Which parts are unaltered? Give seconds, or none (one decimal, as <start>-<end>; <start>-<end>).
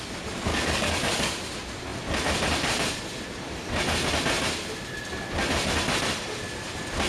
0.0-0.5; 1.4-7.1